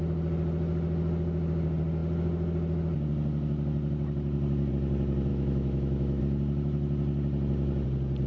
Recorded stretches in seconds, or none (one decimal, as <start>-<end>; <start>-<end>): 0.0-5.3; 6.2-8.3